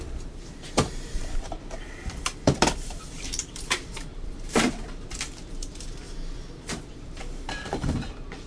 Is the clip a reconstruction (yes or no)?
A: yes